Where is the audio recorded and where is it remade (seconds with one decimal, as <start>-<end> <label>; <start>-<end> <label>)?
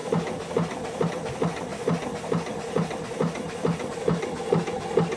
0.0-5.2 recorded